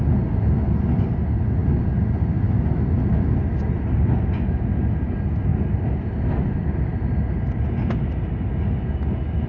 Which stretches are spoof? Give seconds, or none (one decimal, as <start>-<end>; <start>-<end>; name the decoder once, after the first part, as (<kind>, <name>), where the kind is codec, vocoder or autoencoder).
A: none